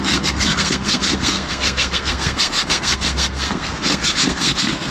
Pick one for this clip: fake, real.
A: fake